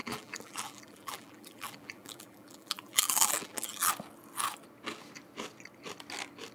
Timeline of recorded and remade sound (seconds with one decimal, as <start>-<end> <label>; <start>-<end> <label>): 0.0-3.9 remade; 3.9-6.5 recorded